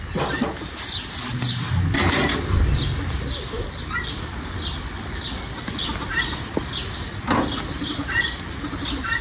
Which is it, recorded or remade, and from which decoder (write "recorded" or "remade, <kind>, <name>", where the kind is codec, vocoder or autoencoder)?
recorded